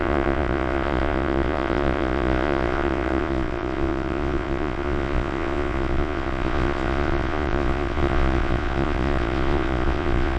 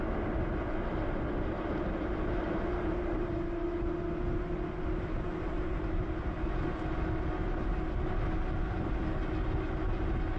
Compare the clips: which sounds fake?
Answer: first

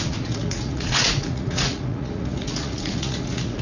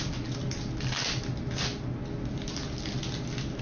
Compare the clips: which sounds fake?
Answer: first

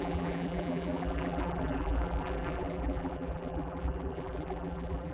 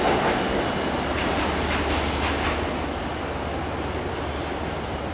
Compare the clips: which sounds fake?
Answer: first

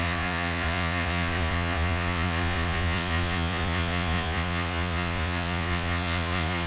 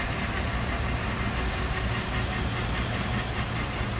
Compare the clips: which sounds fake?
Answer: first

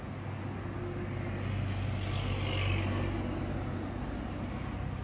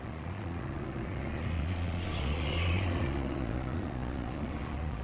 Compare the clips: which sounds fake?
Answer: second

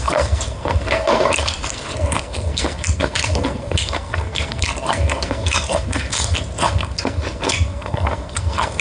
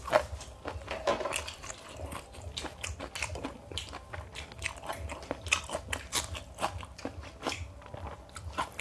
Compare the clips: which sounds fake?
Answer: first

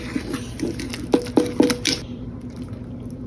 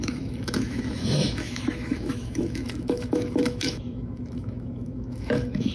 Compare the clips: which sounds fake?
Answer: second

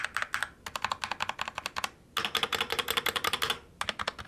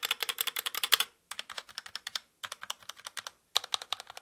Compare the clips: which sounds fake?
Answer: second